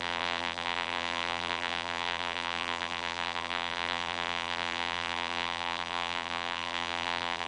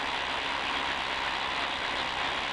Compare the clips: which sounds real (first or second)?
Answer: second